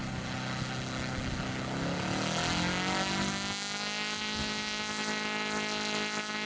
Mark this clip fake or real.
real